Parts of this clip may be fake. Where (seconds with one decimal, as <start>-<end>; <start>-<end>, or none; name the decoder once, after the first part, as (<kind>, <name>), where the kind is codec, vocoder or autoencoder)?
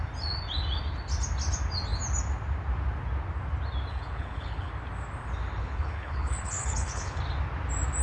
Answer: 3.9-4.7 (codec, HILCodec); 5.6-7.2